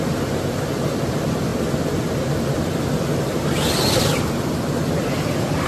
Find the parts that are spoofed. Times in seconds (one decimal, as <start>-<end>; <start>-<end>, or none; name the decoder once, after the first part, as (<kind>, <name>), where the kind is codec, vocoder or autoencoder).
none